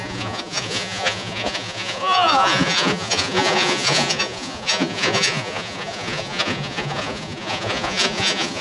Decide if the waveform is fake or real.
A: fake